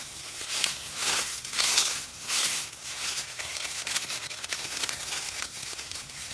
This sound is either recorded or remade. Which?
remade